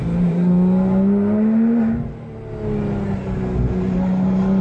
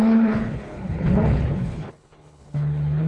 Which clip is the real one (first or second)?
first